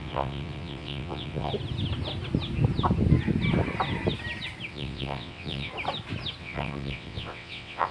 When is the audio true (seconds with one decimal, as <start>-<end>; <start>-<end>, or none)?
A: 1.5-4.7; 5.7-6.4